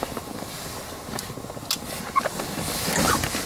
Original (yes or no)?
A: yes